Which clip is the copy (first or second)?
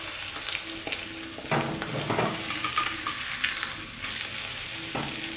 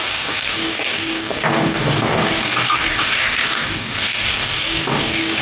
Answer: second